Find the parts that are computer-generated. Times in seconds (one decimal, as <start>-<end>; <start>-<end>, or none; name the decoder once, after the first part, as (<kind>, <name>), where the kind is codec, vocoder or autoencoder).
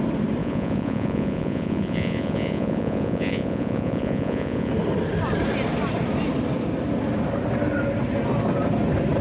0.4-4.7 (vocoder, Vocos)